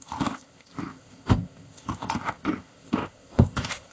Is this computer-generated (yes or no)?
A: yes